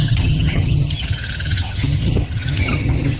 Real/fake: fake